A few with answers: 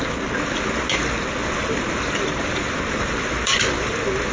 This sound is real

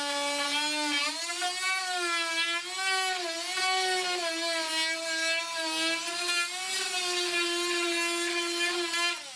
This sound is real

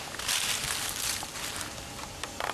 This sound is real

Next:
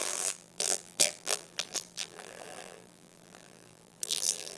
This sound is fake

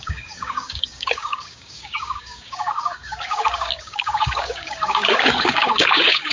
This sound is fake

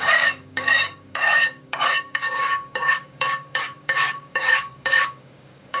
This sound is fake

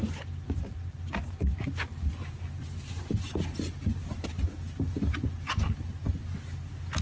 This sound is real